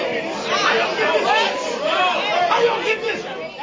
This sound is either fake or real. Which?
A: real